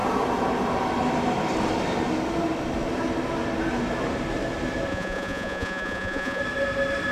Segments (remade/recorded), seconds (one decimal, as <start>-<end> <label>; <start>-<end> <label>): 0.0-4.9 recorded; 4.9-6.4 remade; 6.4-7.1 recorded